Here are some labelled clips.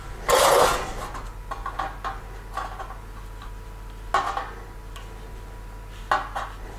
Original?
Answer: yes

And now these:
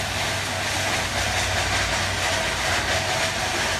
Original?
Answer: yes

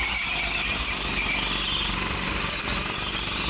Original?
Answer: yes